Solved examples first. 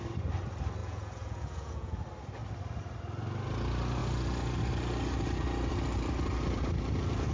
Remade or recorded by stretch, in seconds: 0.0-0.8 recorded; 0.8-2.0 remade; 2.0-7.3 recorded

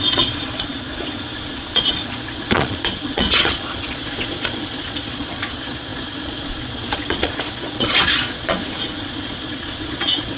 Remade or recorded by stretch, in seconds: 0.0-10.4 remade

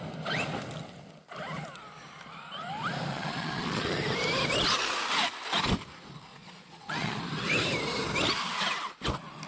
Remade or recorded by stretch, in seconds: 0.0-3.1 recorded; 3.1-4.0 remade; 4.0-6.3 recorded; 6.3-7.2 remade; 7.2-9.5 recorded

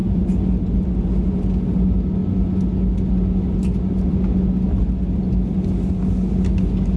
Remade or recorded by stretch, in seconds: 0.0-7.0 recorded

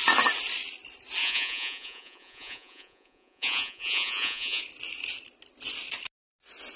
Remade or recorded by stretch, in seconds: 0.0-1.2 recorded; 1.2-4.6 remade; 4.6-6.8 recorded

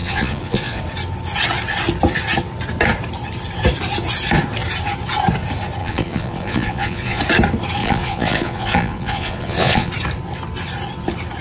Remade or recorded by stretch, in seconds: 0.0-0.8 remade; 0.8-5.8 recorded; 5.8-7.2 remade; 7.2-7.8 recorded; 7.8-9.9 remade; 9.9-11.4 recorded

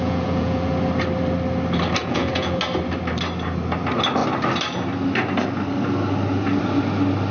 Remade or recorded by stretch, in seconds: 0.0-0.7 remade; 0.7-2.0 recorded; 2.0-2.6 remade; 2.6-7.3 recorded

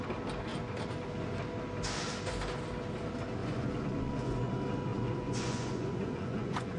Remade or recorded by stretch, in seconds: 0.0-3.4 recorded; 3.4-4.5 remade; 4.5-4.9 recorded; 4.9-6.8 remade